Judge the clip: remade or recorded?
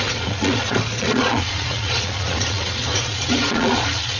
remade